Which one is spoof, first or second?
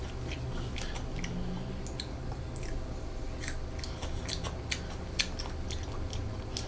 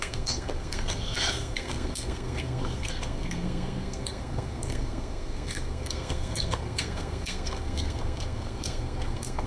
second